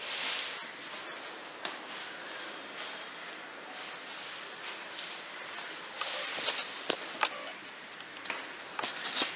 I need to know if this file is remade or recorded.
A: recorded